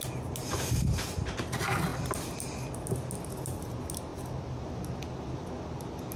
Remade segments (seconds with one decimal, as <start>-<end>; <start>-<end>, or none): none